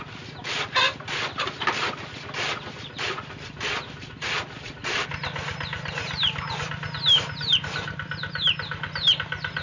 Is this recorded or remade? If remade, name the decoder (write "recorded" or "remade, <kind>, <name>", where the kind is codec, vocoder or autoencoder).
recorded